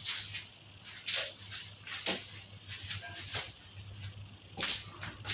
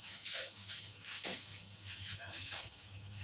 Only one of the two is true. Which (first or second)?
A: first